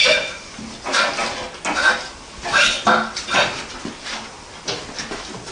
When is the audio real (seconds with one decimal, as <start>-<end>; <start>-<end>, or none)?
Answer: 0.0-5.5